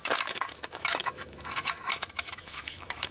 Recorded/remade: remade